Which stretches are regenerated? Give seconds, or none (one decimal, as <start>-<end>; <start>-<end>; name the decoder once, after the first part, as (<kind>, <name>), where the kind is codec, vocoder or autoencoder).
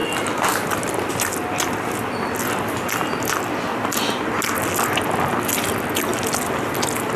none